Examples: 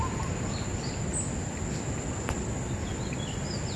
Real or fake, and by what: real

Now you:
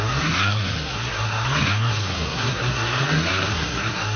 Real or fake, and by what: fake, codec, SNAC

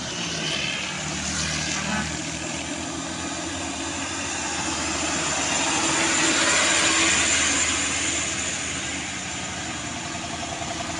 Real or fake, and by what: real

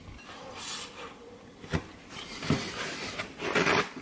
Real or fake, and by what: real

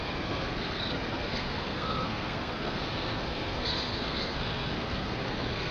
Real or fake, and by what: fake, codec, SNAC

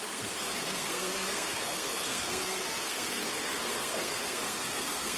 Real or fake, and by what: fake, codec, SNAC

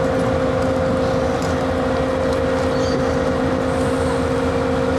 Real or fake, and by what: real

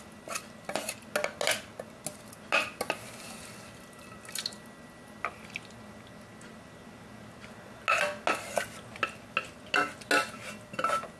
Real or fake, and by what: real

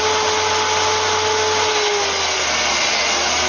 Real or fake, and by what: real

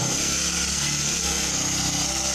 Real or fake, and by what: fake, codec, SNAC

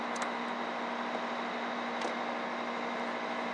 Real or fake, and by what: real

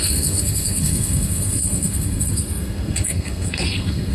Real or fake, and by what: fake, codec, SNAC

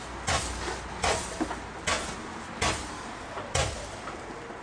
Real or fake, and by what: real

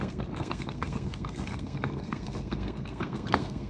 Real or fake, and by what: fake, codec, SNAC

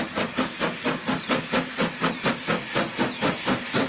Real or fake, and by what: real